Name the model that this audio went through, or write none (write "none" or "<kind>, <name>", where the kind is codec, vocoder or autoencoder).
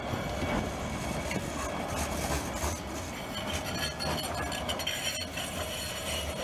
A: none